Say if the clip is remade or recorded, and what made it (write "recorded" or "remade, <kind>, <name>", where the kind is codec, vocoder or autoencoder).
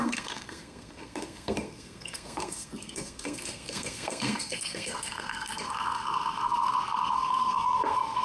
remade, codec, SNAC